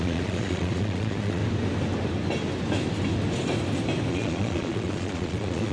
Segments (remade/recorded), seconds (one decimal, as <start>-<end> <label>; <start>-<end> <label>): 0.0-1.4 remade; 1.4-4.1 recorded; 4.1-5.7 remade